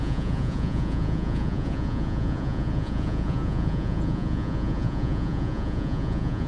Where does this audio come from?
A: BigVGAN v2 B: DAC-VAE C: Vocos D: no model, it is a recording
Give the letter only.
C